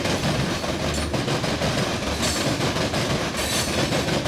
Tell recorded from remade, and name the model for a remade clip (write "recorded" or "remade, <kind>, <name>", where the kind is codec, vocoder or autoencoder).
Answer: recorded